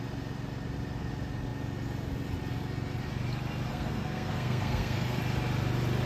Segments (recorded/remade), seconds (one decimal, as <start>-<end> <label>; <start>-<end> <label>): 0.0-3.7 recorded; 3.7-5.2 remade; 5.2-6.1 recorded